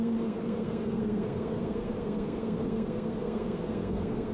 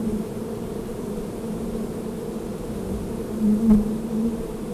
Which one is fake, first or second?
first